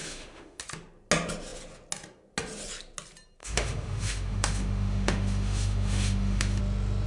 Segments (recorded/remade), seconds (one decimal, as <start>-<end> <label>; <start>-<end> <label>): 0.0-0.6 remade; 0.6-3.4 recorded; 3.4-6.6 remade; 6.6-7.1 recorded